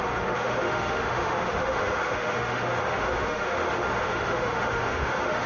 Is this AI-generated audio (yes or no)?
yes